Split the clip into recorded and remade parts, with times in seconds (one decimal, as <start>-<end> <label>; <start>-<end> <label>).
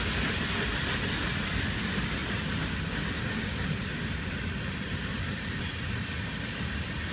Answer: 0.0-7.1 recorded